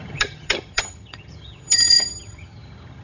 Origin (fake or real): fake